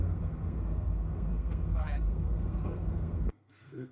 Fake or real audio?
fake